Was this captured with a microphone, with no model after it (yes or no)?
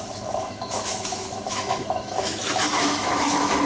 no